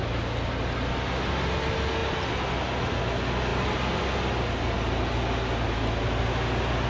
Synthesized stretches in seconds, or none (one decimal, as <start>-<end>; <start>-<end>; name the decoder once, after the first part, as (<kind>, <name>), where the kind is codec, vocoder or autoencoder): none